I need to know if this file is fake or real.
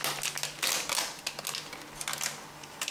real